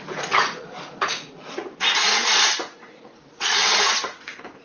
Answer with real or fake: fake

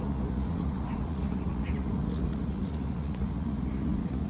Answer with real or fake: fake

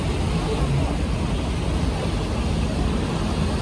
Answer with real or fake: real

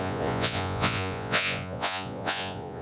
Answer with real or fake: fake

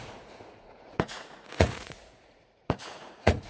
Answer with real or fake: fake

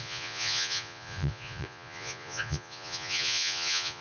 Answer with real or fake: fake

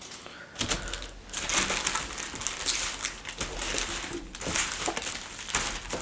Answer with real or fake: real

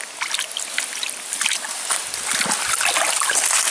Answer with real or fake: real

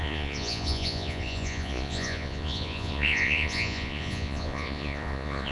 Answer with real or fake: fake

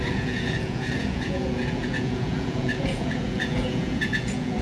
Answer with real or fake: fake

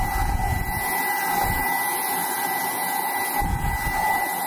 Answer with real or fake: real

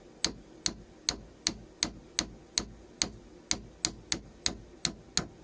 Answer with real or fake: real